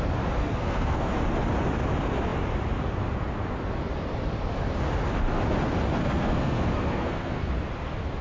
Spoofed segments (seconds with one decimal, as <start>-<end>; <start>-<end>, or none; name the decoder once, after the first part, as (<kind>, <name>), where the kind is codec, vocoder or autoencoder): 0.4-1.1 (codec, SNAC); 6.0-7.5